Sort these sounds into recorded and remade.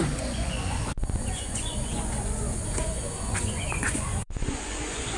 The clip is remade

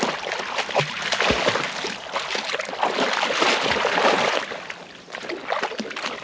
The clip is recorded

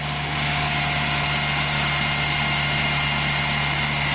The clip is recorded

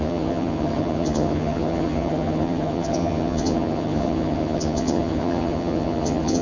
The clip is remade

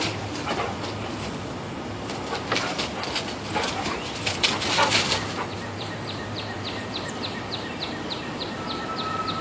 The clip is recorded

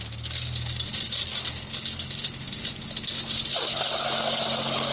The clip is recorded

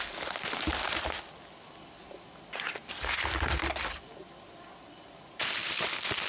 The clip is recorded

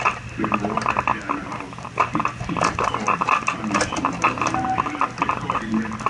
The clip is recorded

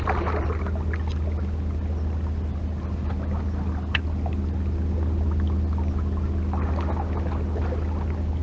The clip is recorded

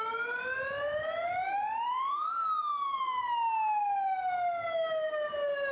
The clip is recorded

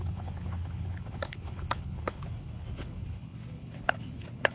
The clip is remade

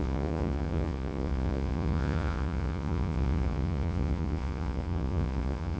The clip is remade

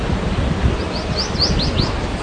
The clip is recorded